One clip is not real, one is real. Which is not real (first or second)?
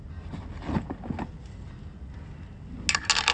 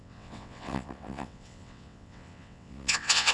second